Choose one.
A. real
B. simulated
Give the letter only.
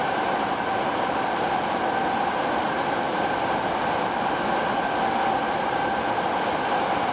A